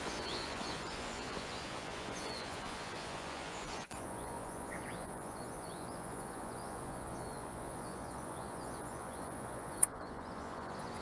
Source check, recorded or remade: remade